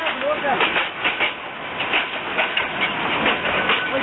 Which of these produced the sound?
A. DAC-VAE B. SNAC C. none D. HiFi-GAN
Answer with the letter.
C